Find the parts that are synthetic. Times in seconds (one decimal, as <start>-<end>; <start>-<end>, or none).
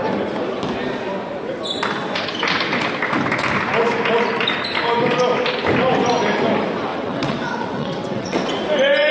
6.9-8.5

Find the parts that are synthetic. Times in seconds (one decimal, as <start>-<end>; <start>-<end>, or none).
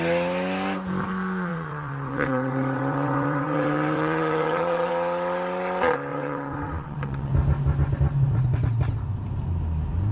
1.5-4.9; 6.1-7.3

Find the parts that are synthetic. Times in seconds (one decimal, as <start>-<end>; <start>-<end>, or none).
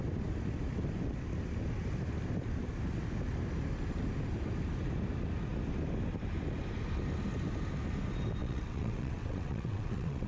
8.4-10.3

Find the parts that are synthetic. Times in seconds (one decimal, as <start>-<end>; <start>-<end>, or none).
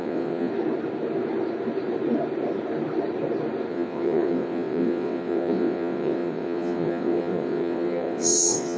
0.0-0.5; 3.7-8.8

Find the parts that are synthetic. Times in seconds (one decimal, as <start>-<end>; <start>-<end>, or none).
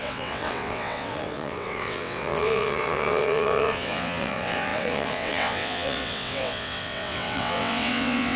0.0-8.4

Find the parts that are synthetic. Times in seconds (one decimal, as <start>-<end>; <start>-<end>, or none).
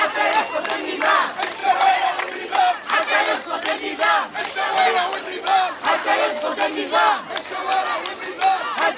1.6-2.6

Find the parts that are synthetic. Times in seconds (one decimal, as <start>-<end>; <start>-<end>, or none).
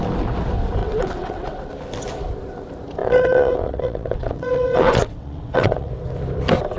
0.8-1.7; 3.0-5.9